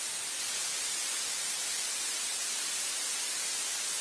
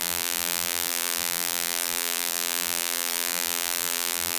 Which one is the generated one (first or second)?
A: second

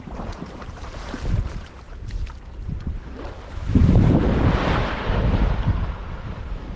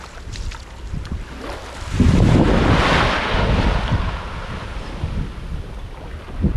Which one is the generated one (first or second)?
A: first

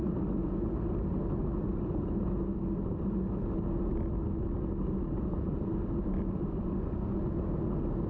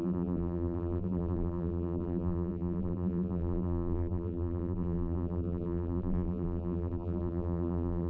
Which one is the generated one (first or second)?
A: second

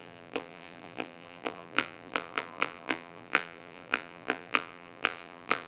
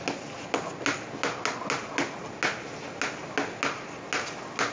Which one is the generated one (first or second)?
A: first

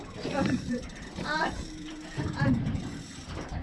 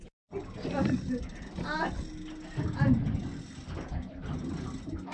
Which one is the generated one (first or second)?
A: first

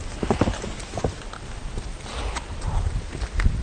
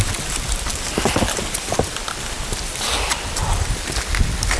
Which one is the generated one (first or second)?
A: second